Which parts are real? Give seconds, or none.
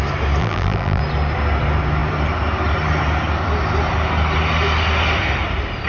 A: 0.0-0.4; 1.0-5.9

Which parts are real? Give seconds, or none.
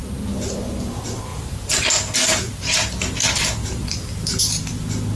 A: 0.5-1.3; 4.4-5.2